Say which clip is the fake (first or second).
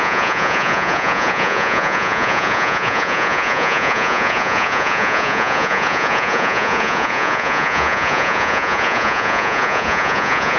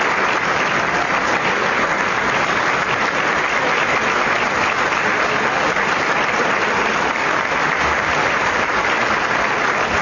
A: first